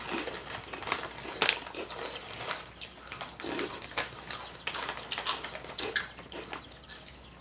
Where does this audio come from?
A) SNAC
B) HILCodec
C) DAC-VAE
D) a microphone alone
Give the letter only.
D